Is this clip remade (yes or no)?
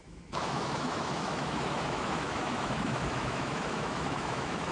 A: yes